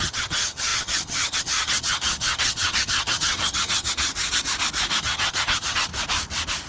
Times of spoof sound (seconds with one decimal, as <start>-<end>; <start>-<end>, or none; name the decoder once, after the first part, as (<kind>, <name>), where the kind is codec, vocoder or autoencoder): 0.0-4.1 (vocoder, HiFi-GAN); 5.0-5.9